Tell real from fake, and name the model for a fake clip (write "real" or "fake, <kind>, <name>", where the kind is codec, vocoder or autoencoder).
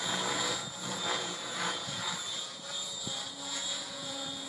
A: fake, vocoder, Vocos